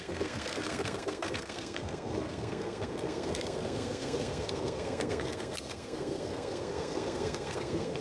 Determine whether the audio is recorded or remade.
remade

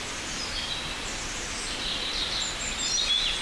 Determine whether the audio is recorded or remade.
recorded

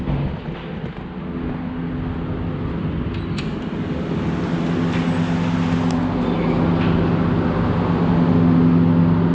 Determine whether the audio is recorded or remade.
recorded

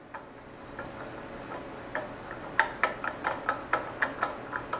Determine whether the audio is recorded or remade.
recorded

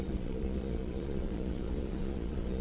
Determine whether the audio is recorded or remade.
remade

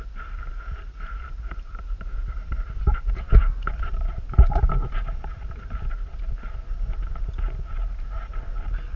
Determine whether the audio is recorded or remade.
recorded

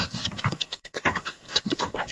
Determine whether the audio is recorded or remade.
remade